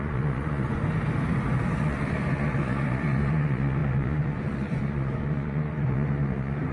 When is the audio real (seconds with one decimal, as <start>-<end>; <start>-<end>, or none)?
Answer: 0.8-1.8